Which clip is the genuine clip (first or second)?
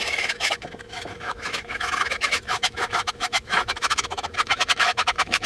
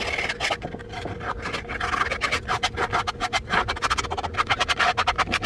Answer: second